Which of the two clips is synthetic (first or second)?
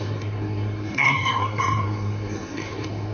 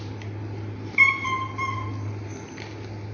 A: first